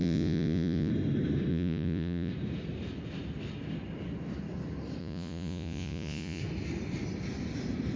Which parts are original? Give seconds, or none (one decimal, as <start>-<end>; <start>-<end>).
0.9-1.5; 2.3-5.0; 6.4-8.0